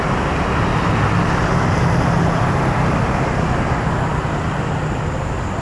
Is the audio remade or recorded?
recorded